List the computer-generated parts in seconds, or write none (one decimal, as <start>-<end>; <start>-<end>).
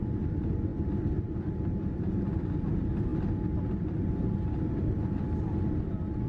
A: none